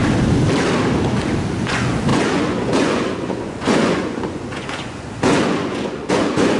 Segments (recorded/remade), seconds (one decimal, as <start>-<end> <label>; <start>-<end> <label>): 0.0-1.6 recorded; 1.6-6.6 remade